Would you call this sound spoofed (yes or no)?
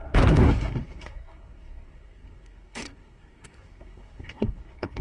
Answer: yes